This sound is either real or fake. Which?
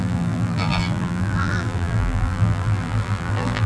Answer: fake